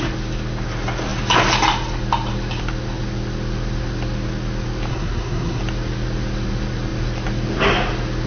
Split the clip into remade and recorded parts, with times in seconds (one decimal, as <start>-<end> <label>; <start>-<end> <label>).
0.0-4.9 recorded; 4.9-5.6 remade; 5.6-8.3 recorded